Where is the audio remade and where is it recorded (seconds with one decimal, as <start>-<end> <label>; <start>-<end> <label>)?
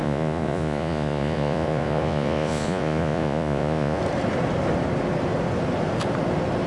0.0-4.0 remade; 4.0-6.7 recorded